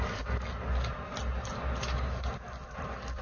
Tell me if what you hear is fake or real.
real